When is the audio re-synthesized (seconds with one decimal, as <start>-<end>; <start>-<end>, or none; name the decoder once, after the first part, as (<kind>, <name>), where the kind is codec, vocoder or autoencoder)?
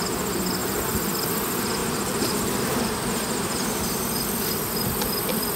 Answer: none